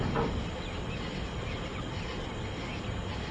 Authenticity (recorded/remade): recorded